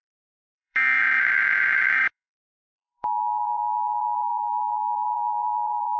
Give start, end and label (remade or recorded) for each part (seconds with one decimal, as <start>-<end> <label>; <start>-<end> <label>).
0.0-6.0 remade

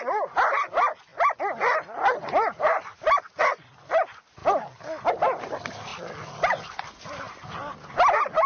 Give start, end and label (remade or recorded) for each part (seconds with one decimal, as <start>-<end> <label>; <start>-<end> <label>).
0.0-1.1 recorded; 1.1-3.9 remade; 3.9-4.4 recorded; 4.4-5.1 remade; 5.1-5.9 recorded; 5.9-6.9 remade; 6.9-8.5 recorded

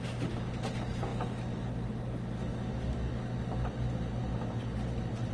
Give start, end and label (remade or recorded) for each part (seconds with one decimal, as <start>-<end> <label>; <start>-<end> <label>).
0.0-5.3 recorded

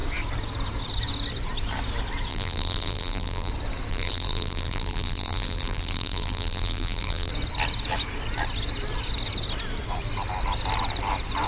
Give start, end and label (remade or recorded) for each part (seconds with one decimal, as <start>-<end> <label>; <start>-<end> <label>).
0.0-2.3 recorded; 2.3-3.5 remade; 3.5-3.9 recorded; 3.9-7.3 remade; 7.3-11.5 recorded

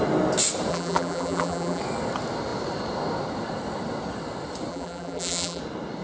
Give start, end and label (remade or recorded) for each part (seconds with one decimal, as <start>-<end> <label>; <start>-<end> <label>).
0.0-0.7 recorded; 0.7-1.8 remade; 1.8-4.7 recorded; 4.7-5.6 remade; 5.6-6.0 recorded

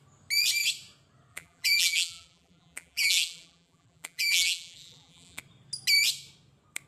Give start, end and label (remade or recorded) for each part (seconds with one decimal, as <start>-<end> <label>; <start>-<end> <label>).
0.0-1.3 recorded; 1.3-5.4 remade; 5.4-6.9 recorded

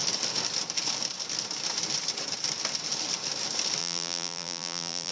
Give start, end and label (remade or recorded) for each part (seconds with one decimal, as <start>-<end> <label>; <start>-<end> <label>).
0.0-3.8 recorded; 3.8-5.1 remade

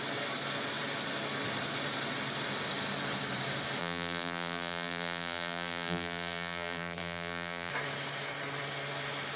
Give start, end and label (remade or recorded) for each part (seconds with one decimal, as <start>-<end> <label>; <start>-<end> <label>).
0.0-3.8 recorded; 3.8-7.7 remade; 7.7-9.4 recorded